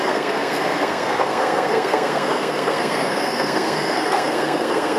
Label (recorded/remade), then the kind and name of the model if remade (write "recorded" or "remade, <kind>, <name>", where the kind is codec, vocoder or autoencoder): remade, codec, SNAC